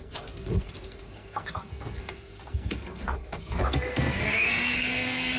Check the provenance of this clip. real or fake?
fake